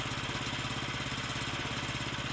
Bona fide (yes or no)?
yes